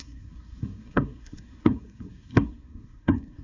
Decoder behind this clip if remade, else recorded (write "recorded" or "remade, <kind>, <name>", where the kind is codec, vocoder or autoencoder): remade, codec, SNAC